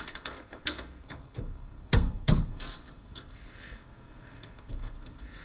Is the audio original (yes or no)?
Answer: no